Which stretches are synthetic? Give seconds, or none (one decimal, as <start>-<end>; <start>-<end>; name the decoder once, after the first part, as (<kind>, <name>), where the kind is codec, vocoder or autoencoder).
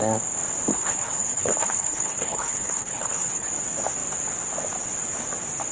0.7-3.5 (codec, HILCodec)